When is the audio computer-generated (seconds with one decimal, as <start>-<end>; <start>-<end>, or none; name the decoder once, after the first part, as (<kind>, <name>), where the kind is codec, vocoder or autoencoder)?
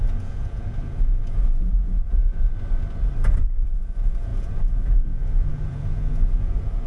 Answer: 0.0-2.3 (vocoder, Vocos); 3.7-6.9